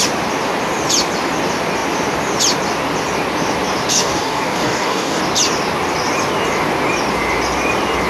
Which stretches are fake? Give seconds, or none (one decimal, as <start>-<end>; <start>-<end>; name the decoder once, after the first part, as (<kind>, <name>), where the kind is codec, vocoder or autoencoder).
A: 3.9-5.2 (codec, DAC)